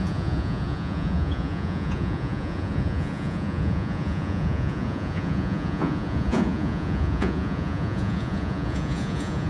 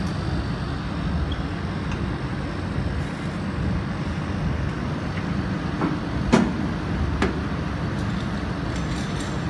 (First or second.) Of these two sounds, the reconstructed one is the first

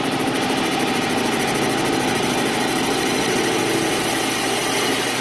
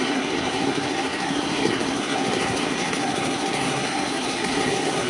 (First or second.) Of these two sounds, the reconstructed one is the second